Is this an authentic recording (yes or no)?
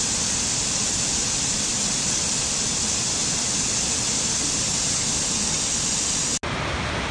yes